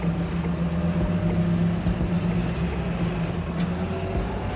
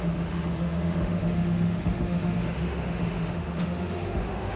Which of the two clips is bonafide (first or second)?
first